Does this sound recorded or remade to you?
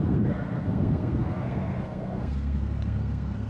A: remade